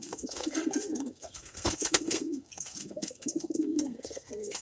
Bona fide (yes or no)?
no